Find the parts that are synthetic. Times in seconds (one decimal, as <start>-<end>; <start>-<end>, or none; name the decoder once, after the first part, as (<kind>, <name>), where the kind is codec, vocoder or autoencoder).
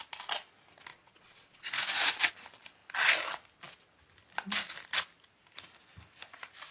0.9-2.3 (vocoder, Vocos)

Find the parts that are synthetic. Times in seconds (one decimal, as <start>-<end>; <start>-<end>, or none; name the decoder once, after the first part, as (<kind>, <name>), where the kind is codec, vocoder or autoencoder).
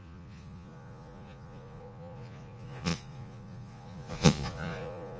0.0-5.2 (vocoder, Vocos)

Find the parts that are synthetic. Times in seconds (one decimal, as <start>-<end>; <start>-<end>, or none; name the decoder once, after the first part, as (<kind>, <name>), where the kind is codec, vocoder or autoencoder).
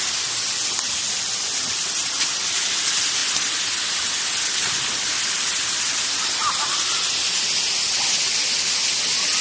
none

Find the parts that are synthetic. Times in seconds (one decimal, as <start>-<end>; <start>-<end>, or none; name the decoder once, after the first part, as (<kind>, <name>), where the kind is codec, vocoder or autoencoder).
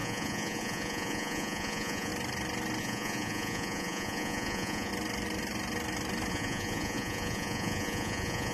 0.0-2.1 (vocoder, Vocos); 2.8-4.9; 6.3-8.5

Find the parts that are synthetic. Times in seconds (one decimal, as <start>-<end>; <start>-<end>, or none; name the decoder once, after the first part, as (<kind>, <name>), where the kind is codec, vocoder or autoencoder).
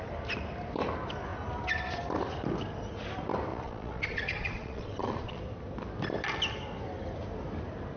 3.5-5.4 (vocoder, Vocos)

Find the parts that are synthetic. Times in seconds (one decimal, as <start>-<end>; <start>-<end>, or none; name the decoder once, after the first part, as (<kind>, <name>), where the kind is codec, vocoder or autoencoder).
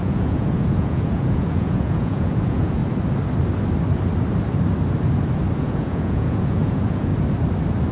0.0-2.8 (vocoder, Vocos); 5.6-7.1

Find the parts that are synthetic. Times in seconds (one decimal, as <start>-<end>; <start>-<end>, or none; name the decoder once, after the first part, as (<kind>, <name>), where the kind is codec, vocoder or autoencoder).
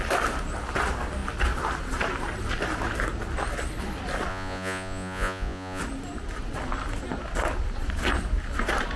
4.3-5.8 (vocoder, Vocos)